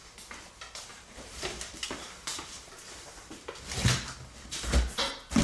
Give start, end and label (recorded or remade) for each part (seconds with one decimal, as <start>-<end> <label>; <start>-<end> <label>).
0.0-0.9 recorded; 0.9-1.6 remade; 1.6-5.4 recorded